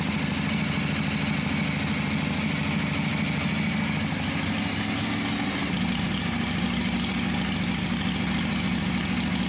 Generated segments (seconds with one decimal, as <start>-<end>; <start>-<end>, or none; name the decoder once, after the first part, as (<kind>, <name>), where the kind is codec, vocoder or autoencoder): none